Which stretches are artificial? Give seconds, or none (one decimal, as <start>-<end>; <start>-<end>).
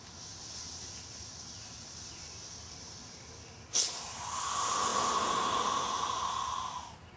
none